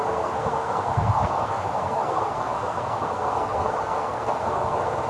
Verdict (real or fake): fake